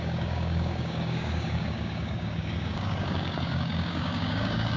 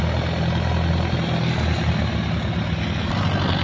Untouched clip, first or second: second